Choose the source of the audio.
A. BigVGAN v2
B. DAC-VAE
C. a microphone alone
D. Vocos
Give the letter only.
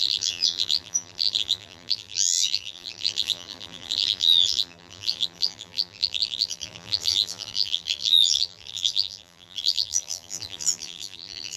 A